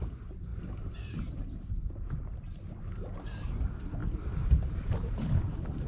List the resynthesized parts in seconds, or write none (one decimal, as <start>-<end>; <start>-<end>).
4.0-5.3